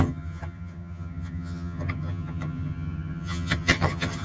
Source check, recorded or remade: remade